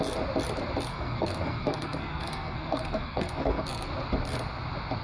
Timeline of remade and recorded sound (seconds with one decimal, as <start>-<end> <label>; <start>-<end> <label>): 0.0-0.9 recorded; 0.9-3.9 remade; 3.9-5.0 recorded